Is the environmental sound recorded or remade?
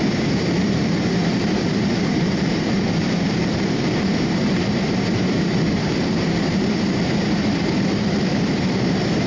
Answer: remade